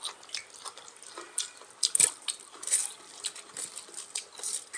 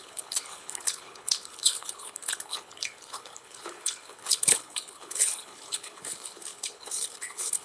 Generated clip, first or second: second